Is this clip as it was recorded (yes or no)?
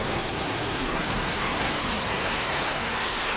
no